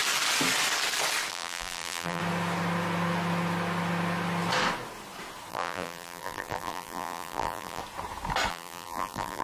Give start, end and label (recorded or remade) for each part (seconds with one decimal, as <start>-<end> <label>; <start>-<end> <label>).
0.0-1.3 recorded; 1.3-2.2 remade; 2.2-5.5 recorded; 5.5-7.8 remade; 7.8-8.5 recorded; 8.5-9.4 remade